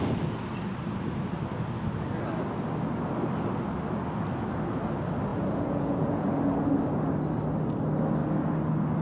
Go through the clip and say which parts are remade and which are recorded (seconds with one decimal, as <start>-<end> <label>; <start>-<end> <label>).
0.0-5.3 recorded; 5.3-6.3 remade; 6.3-9.0 recorded